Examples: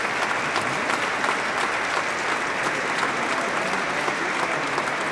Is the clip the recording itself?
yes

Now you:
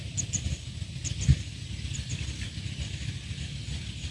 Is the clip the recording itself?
yes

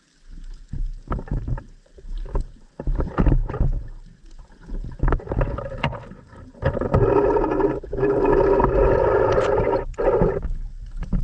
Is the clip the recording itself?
yes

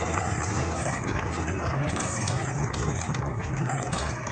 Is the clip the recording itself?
no